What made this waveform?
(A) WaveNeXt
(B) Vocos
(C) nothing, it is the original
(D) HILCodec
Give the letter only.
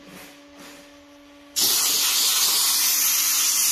C